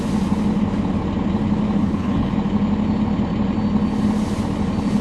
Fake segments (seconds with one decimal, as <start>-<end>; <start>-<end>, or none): 1.8-2.3